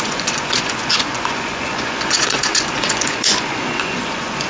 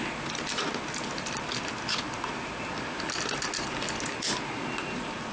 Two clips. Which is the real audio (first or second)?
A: second